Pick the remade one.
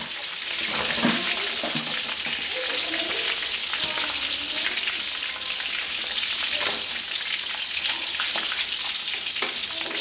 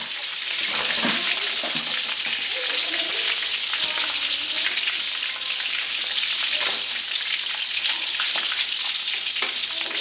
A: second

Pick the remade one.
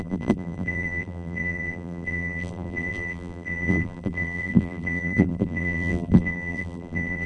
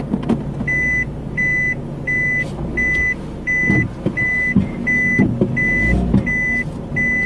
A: first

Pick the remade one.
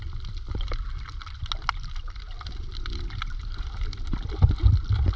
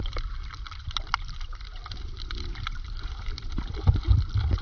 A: second